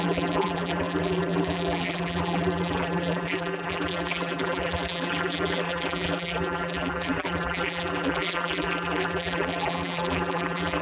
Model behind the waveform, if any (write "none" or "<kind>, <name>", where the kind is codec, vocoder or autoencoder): vocoder, BigVGAN v2